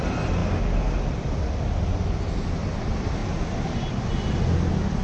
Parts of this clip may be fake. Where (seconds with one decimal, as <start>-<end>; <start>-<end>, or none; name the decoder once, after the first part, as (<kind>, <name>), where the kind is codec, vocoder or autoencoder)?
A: none